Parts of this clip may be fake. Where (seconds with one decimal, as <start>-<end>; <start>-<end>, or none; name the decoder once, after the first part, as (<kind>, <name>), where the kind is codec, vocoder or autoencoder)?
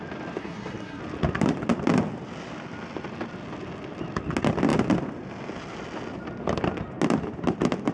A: 0.4-1.0 (codec, SNAC)